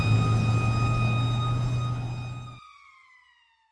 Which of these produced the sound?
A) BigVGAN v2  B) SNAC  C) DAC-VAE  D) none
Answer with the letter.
D